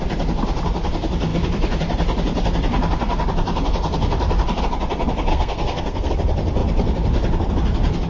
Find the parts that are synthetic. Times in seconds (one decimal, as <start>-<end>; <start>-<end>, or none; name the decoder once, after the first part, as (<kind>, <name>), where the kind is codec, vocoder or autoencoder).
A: 5.3-6.1 (codec, SNAC)